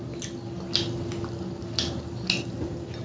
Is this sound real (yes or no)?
yes